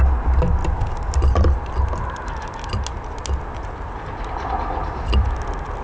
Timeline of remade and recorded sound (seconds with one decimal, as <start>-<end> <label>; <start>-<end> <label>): 0.0-5.8 recorded